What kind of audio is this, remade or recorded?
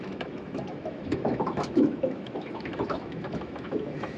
remade